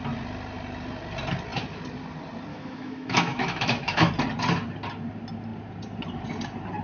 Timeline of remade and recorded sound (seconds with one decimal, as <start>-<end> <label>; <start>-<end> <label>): 0.0-2.5 recorded; 2.5-4.1 remade; 4.1-6.8 recorded